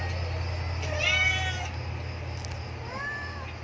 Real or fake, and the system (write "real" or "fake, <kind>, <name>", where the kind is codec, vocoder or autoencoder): real